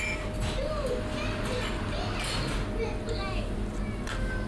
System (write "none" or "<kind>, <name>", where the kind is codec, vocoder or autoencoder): none